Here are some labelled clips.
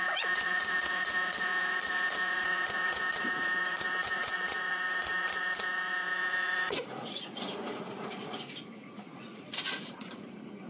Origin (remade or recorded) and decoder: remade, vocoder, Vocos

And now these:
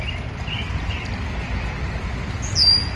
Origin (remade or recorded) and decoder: recorded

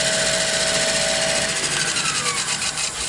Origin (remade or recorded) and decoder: recorded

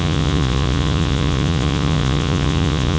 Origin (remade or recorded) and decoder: remade, vocoder, Vocos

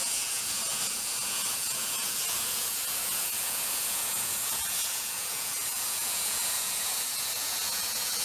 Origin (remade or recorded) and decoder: remade, vocoder, Vocos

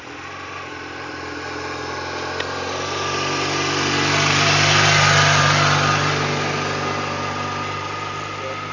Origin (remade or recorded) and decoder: recorded